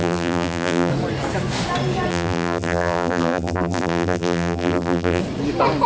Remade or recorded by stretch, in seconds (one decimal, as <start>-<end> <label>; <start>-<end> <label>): 0.0-0.9 remade; 0.9-2.1 recorded; 2.1-5.2 remade; 5.2-5.9 recorded